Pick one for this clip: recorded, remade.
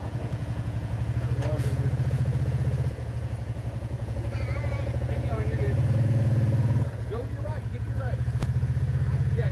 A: remade